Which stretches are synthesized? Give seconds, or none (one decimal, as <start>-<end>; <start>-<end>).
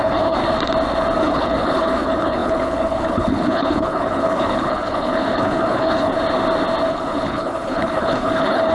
0.0-0.4; 1.2-6.1; 6.9-8.7